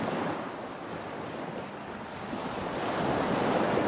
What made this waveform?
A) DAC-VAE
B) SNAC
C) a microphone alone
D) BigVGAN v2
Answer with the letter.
C